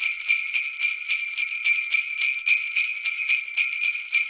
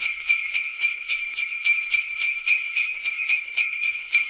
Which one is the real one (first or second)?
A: first